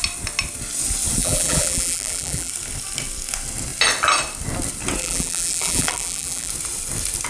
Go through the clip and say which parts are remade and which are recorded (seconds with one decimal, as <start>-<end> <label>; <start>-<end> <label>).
0.0-1.2 recorded; 1.2-2.5 remade; 2.5-5.0 recorded; 5.0-6.5 remade; 6.5-7.3 recorded